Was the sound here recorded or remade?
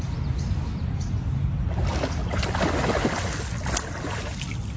recorded